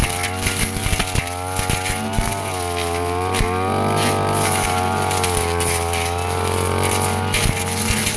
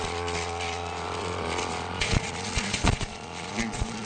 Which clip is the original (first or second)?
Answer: first